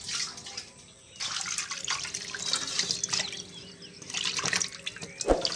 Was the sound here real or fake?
real